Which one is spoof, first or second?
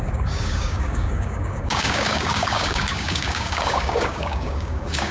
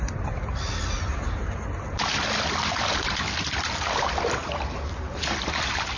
first